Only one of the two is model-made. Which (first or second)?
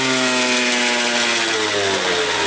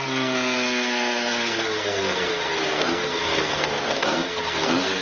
second